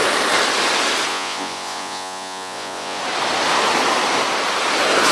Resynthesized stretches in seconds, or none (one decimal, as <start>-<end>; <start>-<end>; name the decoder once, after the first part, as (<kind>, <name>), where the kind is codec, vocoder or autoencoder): 1.1-3.0 (vocoder, Vocos)